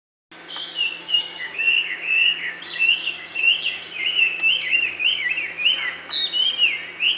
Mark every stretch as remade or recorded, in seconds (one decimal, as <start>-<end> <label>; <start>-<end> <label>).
0.0-1.0 recorded; 1.0-5.3 remade; 5.3-7.2 recorded